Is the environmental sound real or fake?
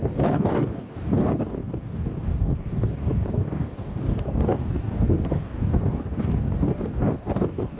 fake